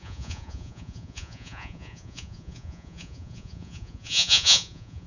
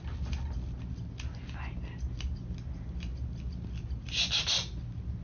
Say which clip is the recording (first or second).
second